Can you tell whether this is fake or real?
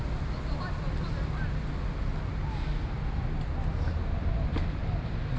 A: real